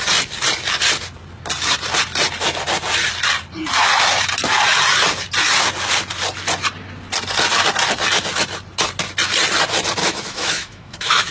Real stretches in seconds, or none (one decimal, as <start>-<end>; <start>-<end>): 0.0-10.0